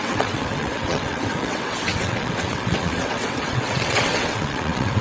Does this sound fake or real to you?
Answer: fake